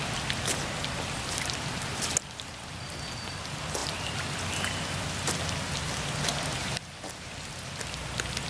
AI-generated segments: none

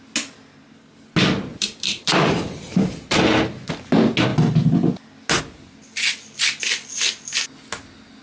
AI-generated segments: 1.5-3.2 (vocoder, BigVGAN v2)

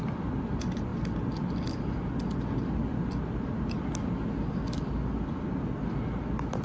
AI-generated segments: none

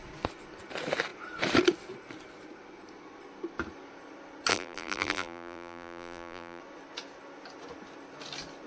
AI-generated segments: 4.5-6.6 (vocoder, BigVGAN v2)

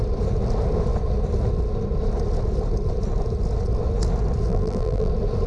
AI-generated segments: 4.5-5.1 (vocoder, BigVGAN v2)